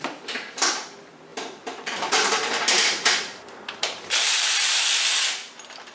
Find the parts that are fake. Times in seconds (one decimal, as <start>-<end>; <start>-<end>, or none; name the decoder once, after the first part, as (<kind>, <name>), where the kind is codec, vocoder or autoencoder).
1.3-4.8 (vocoder, BigVGAN v2)